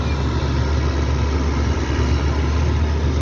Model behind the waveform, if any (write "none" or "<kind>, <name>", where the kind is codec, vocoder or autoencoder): none